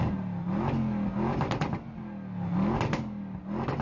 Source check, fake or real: real